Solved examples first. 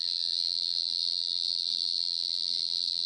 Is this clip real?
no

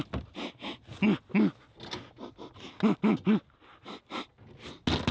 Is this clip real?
yes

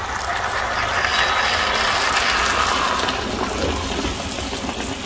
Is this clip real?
yes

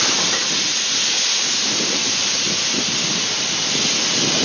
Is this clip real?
yes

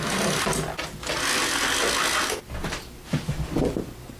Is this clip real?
yes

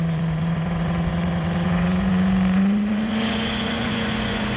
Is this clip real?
no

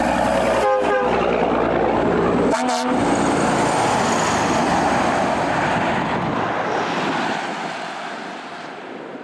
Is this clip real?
yes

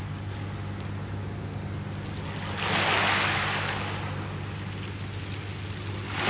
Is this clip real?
yes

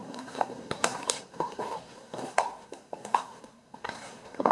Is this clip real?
no